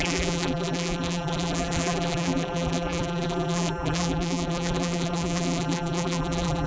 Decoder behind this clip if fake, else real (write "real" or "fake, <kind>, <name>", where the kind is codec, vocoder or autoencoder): fake, vocoder, BigVGAN v2